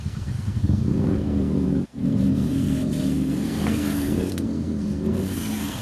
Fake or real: fake